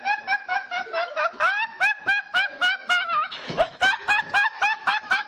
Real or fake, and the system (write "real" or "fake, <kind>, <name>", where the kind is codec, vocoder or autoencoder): fake, autoencoder, DAC-VAE